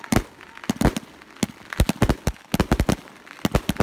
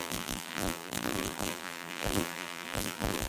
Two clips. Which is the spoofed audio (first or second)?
second